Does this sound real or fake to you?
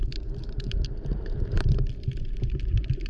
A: fake